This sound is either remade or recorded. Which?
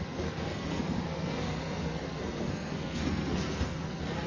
remade